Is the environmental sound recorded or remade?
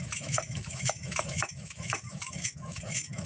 remade